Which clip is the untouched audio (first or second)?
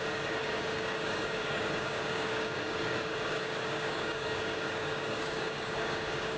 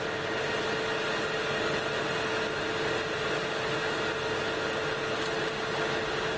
second